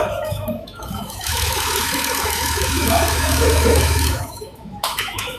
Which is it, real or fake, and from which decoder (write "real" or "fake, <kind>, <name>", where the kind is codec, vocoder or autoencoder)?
fake, autoencoder, DAC-VAE